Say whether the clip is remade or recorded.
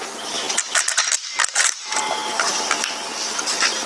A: recorded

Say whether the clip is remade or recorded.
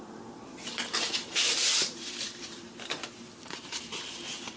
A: remade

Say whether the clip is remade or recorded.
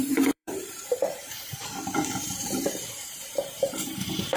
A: remade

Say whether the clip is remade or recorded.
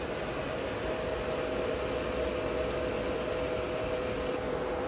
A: recorded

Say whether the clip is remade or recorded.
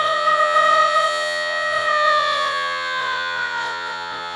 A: remade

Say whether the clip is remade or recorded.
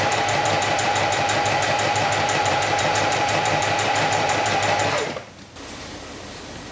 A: remade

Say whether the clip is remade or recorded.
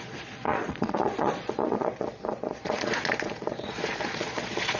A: remade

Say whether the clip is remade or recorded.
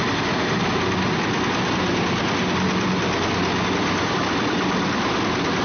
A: recorded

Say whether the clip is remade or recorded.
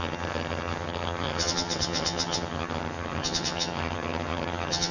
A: remade